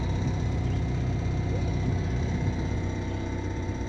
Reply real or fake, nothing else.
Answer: fake